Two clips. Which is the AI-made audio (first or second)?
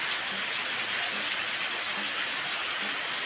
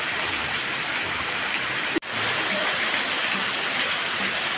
second